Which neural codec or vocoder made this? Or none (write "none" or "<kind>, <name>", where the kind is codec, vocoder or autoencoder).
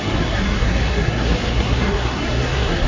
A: codec, SNAC